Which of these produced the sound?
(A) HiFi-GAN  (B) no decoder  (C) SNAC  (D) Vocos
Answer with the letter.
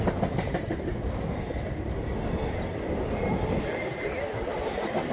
B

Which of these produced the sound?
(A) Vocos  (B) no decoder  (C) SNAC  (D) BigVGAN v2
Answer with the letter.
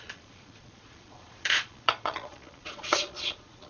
A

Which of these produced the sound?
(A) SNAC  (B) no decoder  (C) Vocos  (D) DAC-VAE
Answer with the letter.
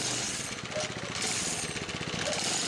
B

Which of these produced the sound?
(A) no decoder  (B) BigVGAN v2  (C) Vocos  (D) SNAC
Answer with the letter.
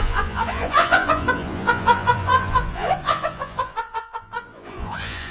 C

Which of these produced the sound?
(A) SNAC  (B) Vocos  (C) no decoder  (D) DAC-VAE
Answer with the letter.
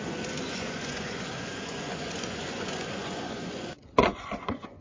B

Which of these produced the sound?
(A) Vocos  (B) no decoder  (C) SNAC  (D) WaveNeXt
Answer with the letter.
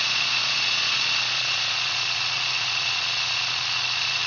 A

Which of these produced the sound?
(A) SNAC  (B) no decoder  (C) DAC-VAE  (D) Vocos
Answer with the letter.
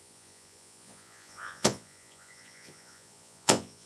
D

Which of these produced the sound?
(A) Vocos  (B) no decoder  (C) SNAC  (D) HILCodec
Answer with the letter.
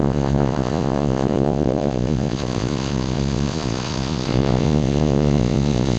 A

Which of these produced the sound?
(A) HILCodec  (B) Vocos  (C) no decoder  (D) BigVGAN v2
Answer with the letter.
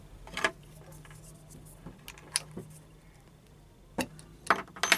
C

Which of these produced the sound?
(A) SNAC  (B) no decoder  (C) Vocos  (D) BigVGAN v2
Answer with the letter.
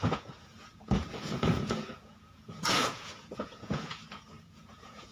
C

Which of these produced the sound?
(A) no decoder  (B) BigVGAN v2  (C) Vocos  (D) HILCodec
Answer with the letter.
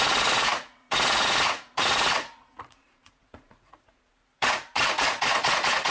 C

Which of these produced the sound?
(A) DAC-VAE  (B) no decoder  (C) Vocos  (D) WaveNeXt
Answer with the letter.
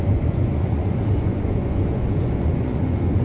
C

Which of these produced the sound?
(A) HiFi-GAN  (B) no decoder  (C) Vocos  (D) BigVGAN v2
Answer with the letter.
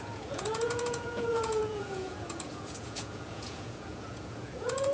C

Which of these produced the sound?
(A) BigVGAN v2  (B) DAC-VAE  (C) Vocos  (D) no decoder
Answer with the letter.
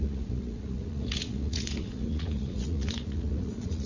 C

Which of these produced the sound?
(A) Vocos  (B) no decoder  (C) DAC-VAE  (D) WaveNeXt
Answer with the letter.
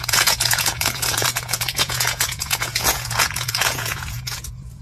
A